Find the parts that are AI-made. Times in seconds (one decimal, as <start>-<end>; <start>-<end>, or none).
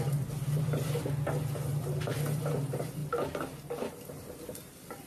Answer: none